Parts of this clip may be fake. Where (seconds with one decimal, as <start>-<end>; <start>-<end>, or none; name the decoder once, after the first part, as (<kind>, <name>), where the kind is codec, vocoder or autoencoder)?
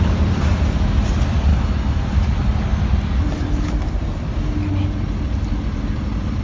1.5-2.0 (autoencoder, DAC-VAE)